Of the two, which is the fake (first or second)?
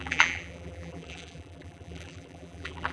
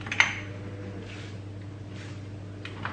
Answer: first